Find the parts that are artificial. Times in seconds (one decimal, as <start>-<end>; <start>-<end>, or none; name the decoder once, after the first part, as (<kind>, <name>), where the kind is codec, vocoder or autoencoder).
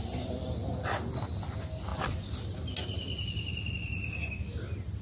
none